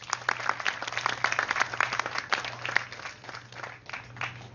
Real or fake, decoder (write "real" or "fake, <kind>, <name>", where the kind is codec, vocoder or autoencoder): real